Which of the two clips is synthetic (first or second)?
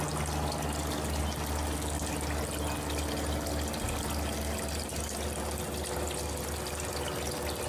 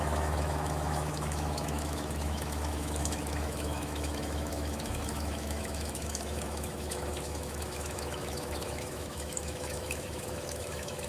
second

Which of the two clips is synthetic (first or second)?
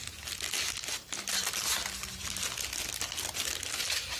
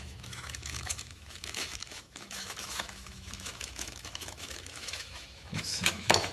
second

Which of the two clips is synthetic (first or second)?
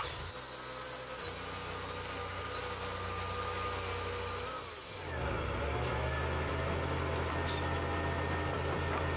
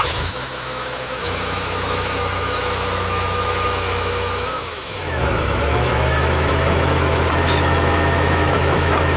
second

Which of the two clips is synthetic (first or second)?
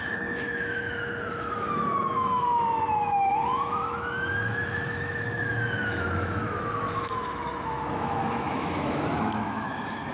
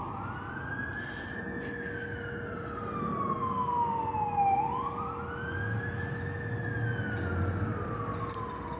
first